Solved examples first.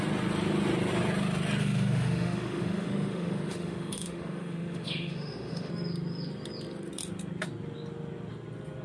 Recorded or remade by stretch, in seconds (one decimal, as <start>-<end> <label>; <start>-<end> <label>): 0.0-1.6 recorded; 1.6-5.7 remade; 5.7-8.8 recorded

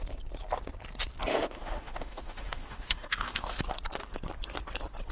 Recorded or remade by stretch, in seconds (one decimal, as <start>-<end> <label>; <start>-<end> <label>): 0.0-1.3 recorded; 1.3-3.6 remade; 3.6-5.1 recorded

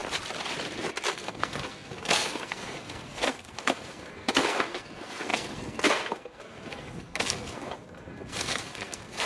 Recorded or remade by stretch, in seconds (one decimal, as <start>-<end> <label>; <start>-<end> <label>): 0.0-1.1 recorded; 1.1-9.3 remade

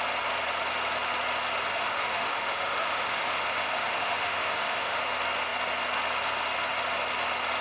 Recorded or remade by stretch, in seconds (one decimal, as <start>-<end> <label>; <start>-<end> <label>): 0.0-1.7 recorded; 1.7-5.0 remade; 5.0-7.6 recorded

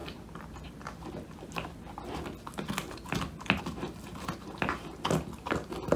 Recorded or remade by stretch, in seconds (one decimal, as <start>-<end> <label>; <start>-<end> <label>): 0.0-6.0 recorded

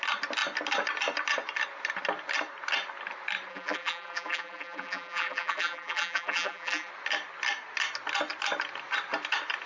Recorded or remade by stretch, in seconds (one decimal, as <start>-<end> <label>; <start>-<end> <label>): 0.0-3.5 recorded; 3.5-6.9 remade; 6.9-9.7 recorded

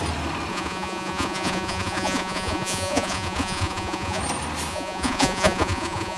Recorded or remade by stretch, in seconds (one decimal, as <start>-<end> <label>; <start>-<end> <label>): 0.0-0.5 recorded; 0.5-4.2 remade; 4.2-4.7 recorded; 4.7-6.2 remade

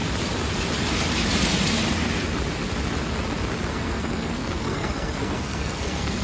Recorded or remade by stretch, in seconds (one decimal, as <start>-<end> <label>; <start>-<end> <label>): 0.0-3.7 recorded; 3.7-6.2 remade